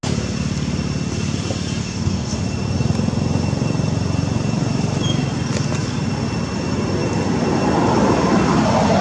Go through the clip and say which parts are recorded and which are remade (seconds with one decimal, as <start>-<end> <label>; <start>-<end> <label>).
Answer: 0.0-1.8 recorded; 1.8-2.4 remade; 2.4-9.0 recorded